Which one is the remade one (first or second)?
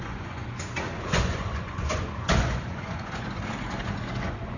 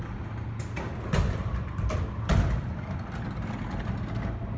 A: first